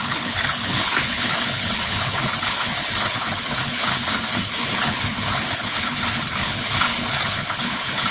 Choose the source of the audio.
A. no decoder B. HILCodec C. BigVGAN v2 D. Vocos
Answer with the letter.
B